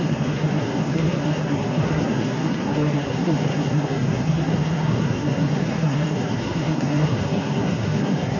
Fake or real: fake